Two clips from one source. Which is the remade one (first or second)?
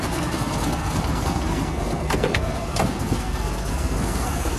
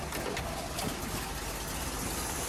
first